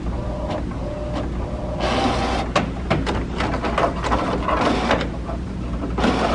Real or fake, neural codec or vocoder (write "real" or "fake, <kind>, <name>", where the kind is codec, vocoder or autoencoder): real